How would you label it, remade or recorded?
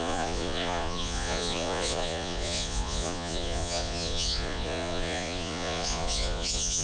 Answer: remade